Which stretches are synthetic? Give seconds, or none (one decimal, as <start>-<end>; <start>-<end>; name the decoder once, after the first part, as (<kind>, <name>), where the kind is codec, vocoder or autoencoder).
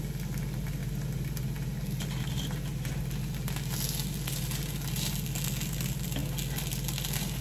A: none